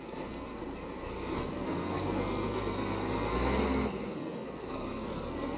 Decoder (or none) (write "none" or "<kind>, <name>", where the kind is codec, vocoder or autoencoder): codec, SNAC